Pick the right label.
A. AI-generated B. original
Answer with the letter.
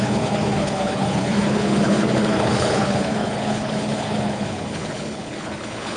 A